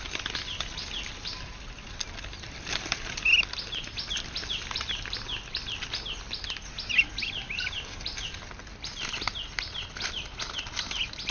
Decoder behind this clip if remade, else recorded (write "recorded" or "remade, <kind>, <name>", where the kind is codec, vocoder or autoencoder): recorded